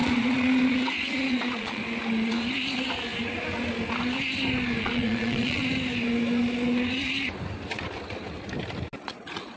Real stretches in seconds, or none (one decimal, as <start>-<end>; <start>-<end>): 1.8-4.8; 5.6-9.1